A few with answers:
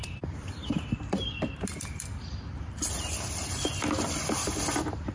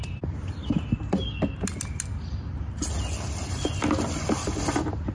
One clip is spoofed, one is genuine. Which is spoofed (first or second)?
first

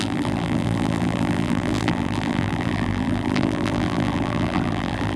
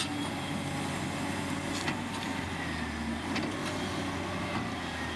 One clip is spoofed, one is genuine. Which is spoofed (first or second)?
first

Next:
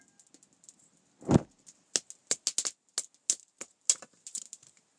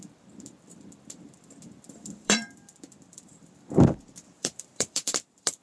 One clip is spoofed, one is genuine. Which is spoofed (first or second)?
second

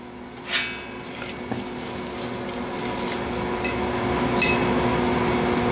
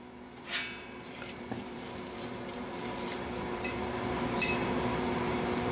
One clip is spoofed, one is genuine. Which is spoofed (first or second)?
second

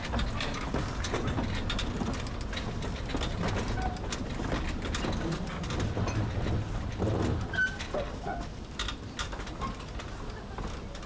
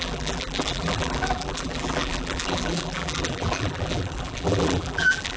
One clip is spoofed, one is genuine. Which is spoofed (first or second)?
second